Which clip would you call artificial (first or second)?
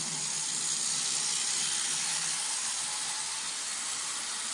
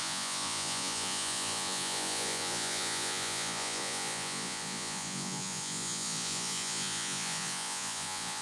second